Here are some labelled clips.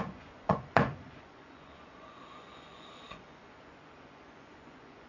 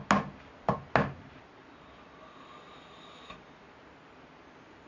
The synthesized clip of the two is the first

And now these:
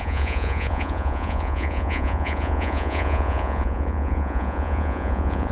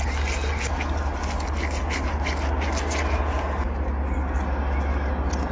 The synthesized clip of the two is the first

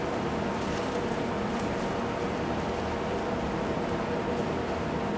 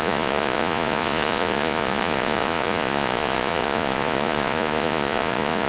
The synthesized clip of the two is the second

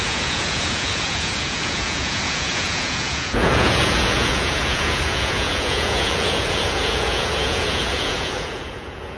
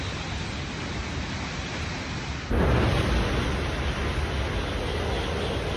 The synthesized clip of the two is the first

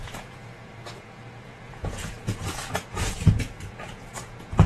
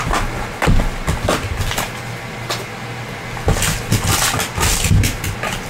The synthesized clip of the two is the first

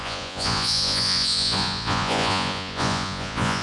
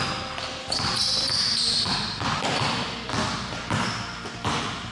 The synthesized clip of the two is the first